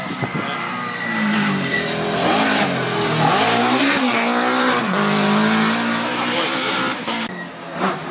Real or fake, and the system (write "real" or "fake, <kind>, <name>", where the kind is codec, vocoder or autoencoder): real